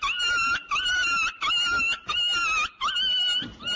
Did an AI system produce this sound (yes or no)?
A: no